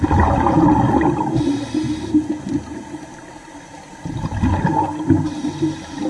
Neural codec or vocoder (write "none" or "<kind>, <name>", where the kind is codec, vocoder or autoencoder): none